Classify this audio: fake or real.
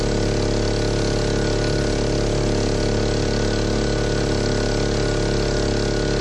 real